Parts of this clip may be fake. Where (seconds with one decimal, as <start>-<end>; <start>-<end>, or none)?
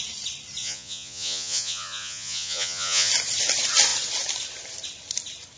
0.6-3.1